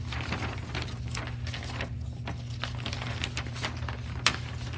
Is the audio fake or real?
real